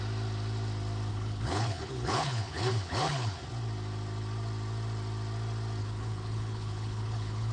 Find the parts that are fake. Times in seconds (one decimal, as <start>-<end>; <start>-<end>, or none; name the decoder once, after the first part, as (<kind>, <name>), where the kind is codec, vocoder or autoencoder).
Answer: 1.1-3.4 (codec, HILCodec); 5.8-7.5